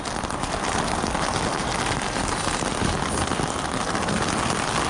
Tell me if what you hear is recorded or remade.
recorded